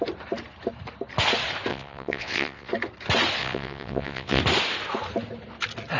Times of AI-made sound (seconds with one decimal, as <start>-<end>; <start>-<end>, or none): 1.7-2.7; 3.4-4.4